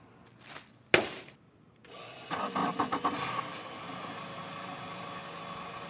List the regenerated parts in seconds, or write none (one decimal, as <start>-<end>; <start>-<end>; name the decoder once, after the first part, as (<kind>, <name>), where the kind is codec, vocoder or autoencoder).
none